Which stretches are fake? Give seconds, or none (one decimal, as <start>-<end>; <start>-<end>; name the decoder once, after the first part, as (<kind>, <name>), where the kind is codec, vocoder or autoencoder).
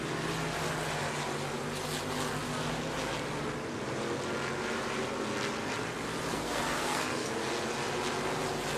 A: 6.3-7.3 (codec, SNAC)